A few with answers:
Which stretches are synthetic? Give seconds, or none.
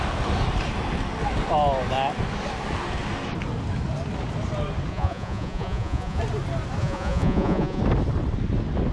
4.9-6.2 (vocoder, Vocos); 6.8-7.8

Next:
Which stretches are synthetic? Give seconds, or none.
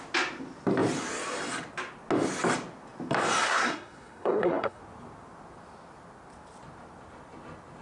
3.4-4.8 (codec, SNAC)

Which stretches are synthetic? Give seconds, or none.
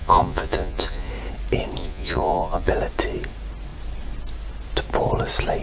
0.0-1.1 (vocoder, Vocos); 1.8-2.7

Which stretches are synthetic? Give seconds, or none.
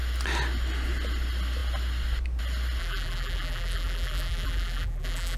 2.8-5.4 (vocoder, BigVGAN v2)